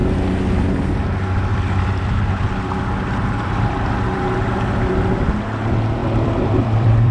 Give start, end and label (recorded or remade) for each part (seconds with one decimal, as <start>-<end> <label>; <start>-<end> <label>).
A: 0.0-1.5 recorded; 1.5-5.3 remade; 5.3-6.0 recorded; 6.0-7.1 remade